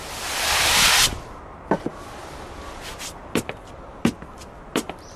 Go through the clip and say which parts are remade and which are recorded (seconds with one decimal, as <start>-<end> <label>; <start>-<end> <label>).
0.0-5.2 recorded